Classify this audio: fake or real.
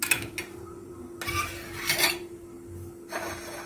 real